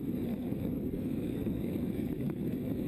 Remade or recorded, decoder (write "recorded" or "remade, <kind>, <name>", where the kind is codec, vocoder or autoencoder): remade, codec, SNAC